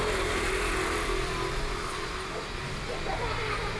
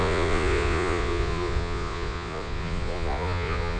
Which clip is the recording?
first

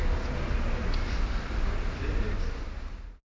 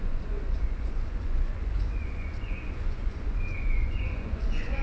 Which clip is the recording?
first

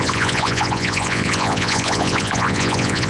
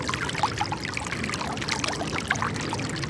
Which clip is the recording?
second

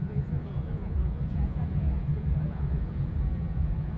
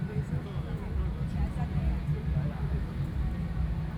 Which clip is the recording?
second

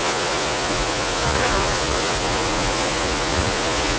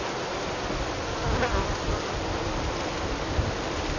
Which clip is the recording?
second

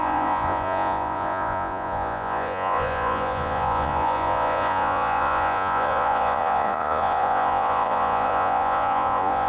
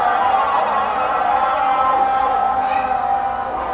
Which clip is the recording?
second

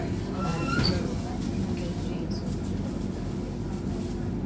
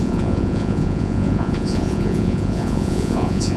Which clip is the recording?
first